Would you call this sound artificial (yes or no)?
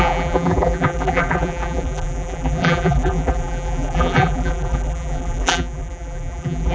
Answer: yes